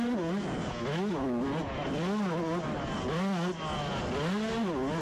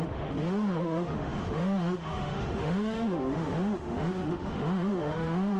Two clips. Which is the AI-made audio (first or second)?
second